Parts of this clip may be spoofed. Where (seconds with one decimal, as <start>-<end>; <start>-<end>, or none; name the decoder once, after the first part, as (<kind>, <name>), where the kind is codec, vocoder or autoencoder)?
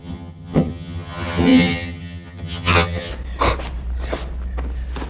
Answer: 0.0-3.1 (vocoder, HiFi-GAN)